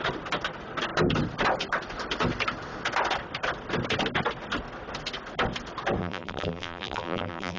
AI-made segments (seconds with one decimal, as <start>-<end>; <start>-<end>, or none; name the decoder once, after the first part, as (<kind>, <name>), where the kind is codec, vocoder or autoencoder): 6.0-7.6 (vocoder, BigVGAN v2)